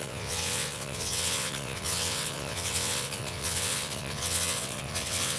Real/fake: fake